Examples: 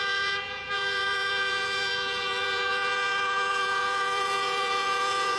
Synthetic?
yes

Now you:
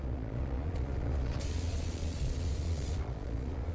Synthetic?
yes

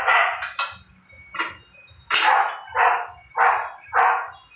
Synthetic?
no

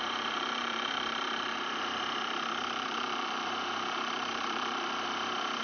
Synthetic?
yes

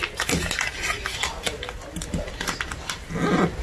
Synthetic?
no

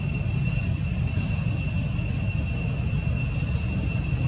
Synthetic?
no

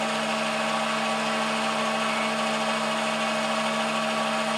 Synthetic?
no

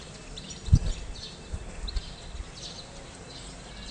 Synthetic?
no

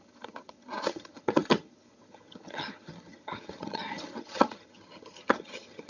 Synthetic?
yes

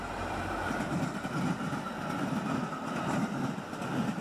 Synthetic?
no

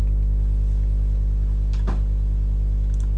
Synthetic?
no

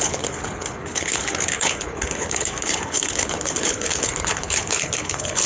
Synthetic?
yes